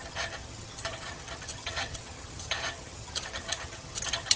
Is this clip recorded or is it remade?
remade